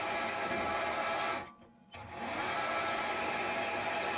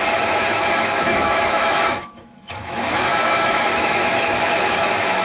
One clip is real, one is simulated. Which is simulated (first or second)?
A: second